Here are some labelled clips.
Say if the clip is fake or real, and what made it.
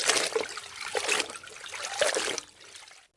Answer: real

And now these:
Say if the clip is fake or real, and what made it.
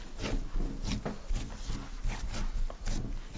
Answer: real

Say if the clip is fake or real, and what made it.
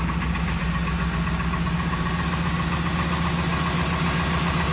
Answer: real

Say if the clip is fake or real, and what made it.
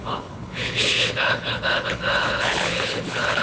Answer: fake, codec, HILCodec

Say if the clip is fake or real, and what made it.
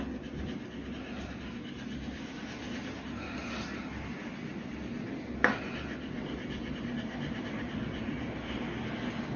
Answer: real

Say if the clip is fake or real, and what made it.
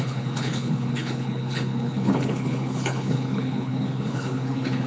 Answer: fake, codec, HILCodec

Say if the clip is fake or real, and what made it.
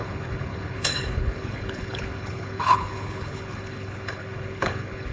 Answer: fake, codec, HILCodec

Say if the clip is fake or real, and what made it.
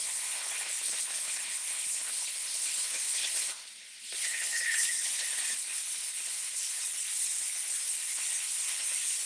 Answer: fake, codec, HILCodec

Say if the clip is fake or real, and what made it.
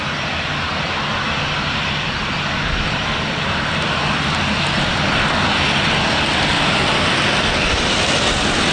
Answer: real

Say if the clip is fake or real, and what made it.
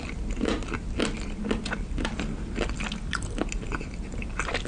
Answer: real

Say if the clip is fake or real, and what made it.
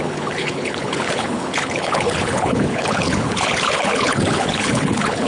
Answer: fake, codec, HILCodec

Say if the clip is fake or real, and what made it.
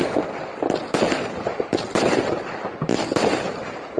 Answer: real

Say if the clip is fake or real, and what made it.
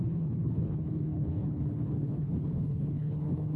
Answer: fake, codec, HILCodec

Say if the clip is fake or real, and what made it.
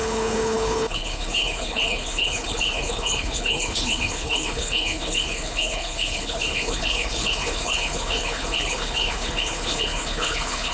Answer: fake, codec, HILCodec